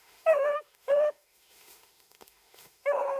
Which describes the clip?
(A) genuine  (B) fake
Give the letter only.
B